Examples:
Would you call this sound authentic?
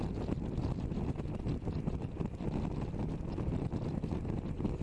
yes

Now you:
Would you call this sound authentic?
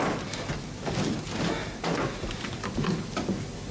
yes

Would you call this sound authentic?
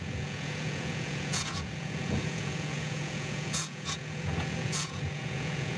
no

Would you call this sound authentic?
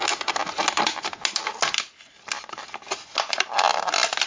yes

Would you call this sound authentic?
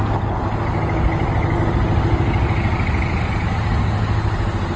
yes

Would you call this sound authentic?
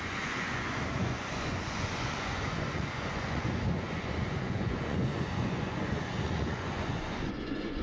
no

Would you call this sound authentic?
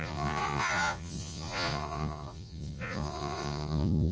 no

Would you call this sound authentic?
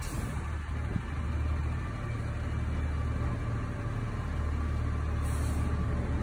yes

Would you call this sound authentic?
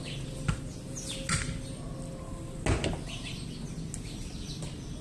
yes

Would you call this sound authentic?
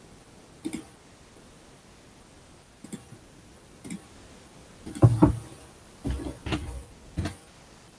yes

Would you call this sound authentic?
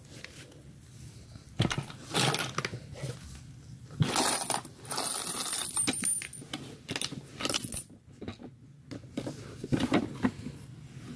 yes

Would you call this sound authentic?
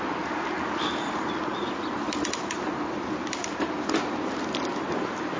yes